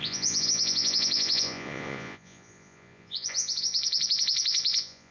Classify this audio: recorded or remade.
remade